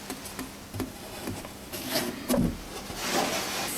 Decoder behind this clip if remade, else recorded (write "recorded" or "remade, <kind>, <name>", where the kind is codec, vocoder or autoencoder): recorded